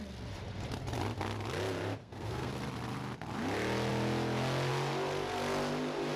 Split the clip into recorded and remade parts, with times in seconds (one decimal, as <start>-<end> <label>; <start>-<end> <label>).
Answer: 0.0-2.0 recorded; 2.0-2.5 remade; 2.5-6.2 recorded